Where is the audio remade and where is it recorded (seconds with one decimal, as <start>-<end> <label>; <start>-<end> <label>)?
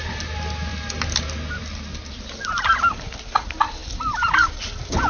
0.0-5.1 recorded